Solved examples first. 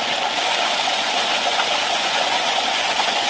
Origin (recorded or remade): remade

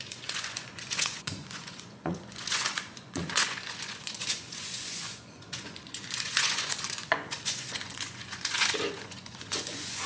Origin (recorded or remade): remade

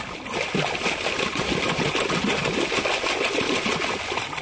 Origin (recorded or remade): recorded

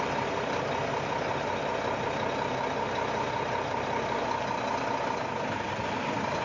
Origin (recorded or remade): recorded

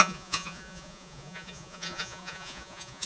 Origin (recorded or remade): remade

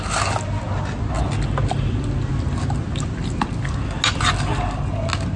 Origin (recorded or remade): recorded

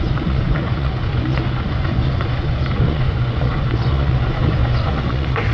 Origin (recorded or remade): remade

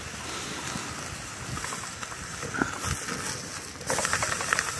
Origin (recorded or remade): recorded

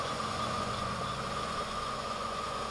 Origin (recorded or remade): remade